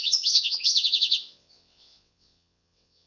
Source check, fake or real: fake